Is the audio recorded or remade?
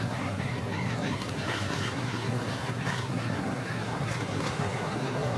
remade